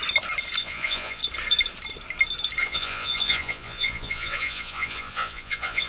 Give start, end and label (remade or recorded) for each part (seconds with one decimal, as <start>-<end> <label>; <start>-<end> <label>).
0.0-0.6 recorded; 0.6-1.2 remade; 1.2-2.6 recorded; 2.6-5.9 remade

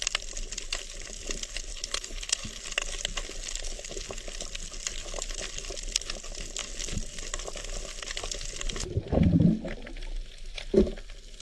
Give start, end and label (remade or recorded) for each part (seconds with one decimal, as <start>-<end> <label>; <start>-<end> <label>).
0.0-1.7 recorded; 1.7-2.6 remade; 2.6-11.4 recorded

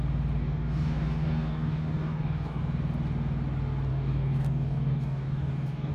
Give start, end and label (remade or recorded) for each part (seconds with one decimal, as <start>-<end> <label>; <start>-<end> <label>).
0.0-0.4 recorded; 0.4-2.6 remade; 2.6-3.9 recorded; 3.9-5.9 remade

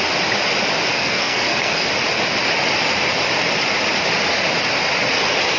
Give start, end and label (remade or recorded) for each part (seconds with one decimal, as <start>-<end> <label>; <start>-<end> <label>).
0.0-0.9 recorded; 0.9-1.9 remade; 1.9-5.6 recorded

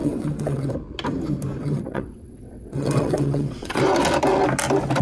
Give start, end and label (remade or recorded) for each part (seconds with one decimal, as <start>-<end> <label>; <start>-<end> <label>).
0.0-0.7 remade; 0.7-1.6 recorded; 1.6-3.8 remade; 3.8-5.0 recorded

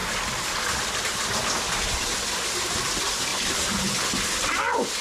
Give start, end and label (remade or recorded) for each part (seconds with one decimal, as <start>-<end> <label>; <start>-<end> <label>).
0.0-2.7 recorded; 2.7-3.3 remade; 3.3-4.4 recorded; 4.4-5.0 remade

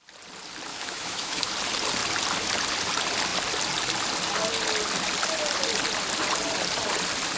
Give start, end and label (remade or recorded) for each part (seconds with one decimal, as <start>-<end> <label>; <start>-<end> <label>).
0.0-0.7 recorded; 0.7-1.5 remade; 1.5-7.4 recorded

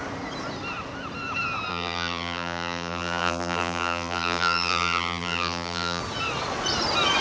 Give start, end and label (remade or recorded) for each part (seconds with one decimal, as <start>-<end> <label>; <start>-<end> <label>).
0.0-1.7 recorded; 1.7-6.0 remade; 6.0-7.2 recorded